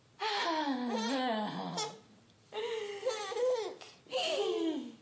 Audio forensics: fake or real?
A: real